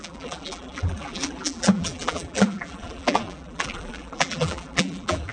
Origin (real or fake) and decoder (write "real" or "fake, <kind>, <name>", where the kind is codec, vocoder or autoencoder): fake, vocoder, BigVGAN v2